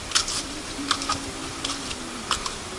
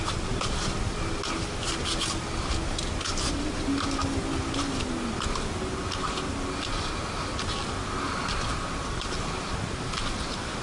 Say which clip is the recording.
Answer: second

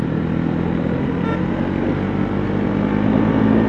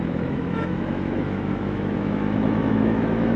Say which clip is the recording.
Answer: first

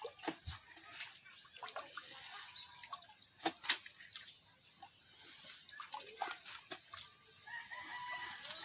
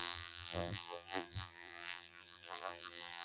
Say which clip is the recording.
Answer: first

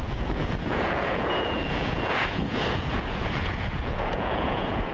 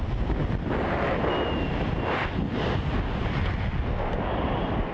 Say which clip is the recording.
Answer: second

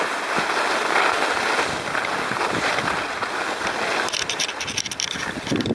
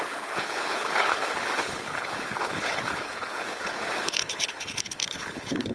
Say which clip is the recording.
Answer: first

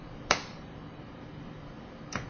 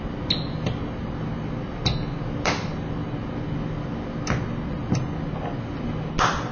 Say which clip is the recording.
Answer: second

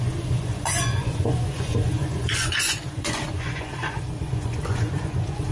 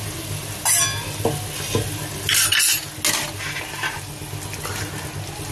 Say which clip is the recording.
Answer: second